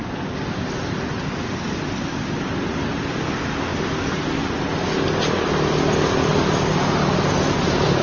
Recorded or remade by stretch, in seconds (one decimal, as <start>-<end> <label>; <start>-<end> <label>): 0.0-8.0 recorded